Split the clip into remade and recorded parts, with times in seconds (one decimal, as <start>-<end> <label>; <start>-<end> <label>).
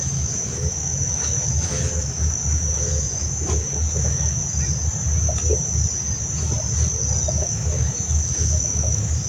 0.0-4.4 remade; 4.4-7.3 recorded; 7.3-9.3 remade